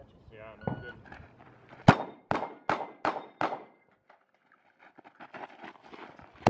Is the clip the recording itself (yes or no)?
yes